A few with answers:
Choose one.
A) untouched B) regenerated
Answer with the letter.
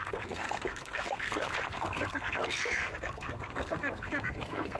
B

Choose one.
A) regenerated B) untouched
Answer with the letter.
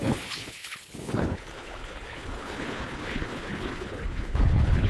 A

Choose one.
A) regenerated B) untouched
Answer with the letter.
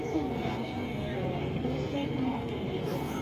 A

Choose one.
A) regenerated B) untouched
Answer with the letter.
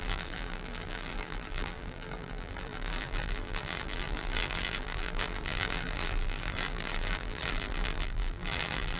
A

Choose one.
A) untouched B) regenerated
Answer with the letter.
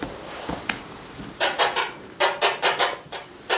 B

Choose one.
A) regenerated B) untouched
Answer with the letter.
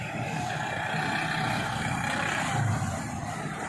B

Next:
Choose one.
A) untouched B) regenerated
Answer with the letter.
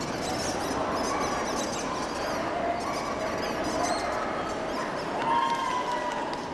A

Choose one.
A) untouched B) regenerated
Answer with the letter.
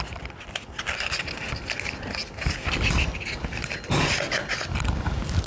A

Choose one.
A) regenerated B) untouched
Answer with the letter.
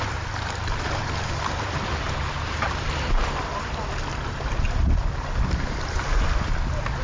B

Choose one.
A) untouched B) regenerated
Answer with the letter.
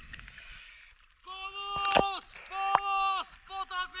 A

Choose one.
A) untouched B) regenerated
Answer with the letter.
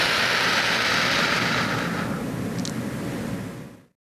A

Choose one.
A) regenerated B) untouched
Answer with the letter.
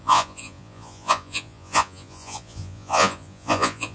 A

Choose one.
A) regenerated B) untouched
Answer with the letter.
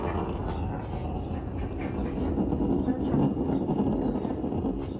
B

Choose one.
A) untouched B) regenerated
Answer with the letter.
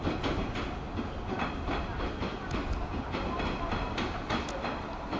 A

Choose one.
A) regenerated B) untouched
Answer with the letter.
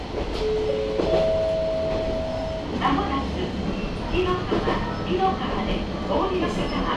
B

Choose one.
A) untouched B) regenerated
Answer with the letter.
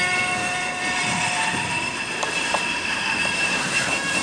B